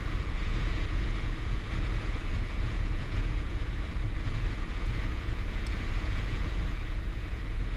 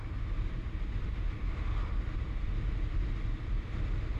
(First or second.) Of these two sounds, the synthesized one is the first